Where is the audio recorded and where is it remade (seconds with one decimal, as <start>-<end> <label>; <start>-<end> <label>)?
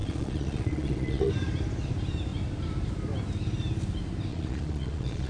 0.0-1.3 remade; 1.3-4.3 recorded; 4.3-5.3 remade